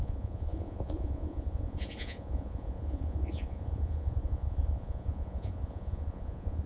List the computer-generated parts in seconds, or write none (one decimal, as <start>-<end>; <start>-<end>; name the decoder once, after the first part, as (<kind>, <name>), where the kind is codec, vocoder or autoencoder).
0.0-6.7 (vocoder, Vocos)